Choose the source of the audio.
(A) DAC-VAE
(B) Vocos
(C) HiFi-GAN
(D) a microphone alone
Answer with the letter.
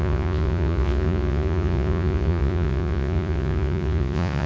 B